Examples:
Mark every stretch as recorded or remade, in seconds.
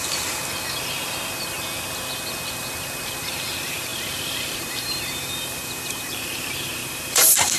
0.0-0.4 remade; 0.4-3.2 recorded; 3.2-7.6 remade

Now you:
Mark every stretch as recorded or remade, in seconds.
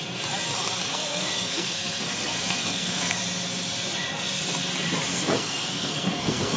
0.0-0.9 recorded; 0.9-3.2 remade; 3.2-5.1 recorded; 5.1-6.6 remade